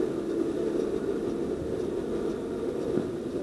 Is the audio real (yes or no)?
yes